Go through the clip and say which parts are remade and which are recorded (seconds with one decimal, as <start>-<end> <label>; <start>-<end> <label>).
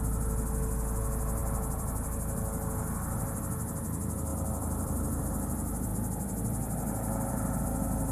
0.0-1.4 recorded; 1.4-3.4 remade; 3.4-4.3 recorded; 4.3-5.2 remade; 5.2-5.9 recorded; 5.9-7.6 remade; 7.6-8.1 recorded